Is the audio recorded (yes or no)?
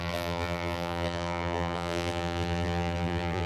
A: no